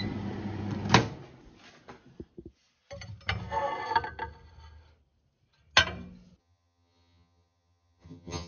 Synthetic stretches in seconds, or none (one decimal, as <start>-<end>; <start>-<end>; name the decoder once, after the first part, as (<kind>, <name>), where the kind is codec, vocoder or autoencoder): 6.4-8.5 (vocoder, HiFi-GAN)